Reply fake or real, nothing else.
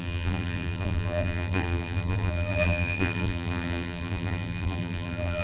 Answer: fake